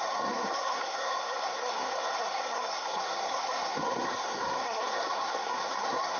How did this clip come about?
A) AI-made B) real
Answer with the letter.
A